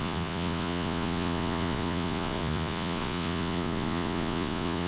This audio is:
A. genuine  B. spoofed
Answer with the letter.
B